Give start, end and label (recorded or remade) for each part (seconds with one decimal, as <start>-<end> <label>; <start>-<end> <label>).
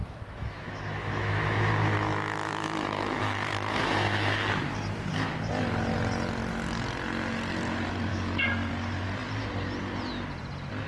0.0-4.5 remade; 4.5-8.1 recorded; 8.1-8.7 remade; 8.7-10.9 recorded